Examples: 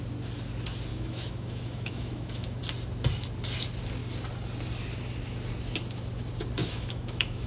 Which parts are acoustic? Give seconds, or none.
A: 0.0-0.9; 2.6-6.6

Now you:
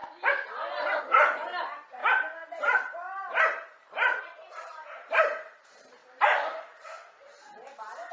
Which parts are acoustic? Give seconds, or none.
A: 0.0-1.0; 6.0-8.1

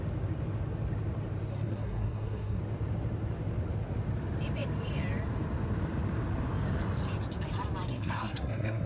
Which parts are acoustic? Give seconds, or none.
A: 0.0-1.5; 2.6-7.9

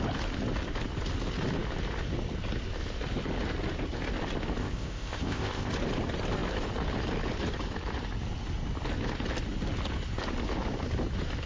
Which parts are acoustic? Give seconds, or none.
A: 0.0-4.6; 5.7-11.5

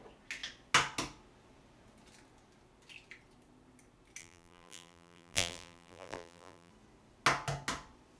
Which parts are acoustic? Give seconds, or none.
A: 0.0-4.2; 6.7-8.2